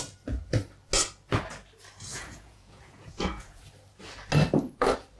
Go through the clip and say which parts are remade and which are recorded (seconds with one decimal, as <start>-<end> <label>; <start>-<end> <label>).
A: 0.0-2.1 recorded; 2.1-3.6 remade; 3.6-5.2 recorded